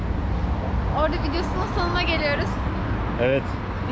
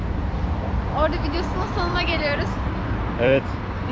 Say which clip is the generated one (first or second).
second